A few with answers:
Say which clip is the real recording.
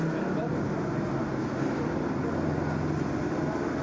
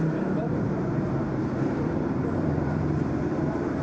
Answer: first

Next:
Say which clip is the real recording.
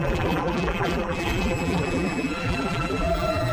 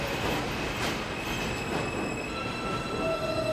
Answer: second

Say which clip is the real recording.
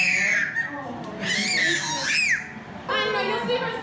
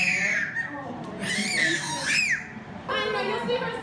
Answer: first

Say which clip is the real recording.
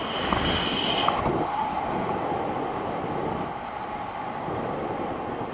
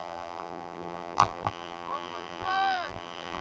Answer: first